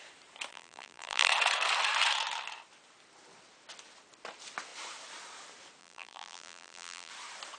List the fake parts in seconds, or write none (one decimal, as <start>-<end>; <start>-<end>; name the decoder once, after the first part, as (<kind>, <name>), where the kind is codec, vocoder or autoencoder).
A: 0.5-1.3 (vocoder, BigVGAN v2); 5.8-7.1